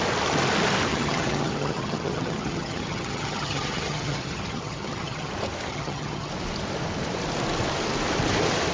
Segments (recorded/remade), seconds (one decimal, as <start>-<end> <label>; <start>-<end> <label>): 0.0-0.9 recorded; 0.9-5.3 remade; 5.3-5.7 recorded; 5.7-6.3 remade; 6.3-8.7 recorded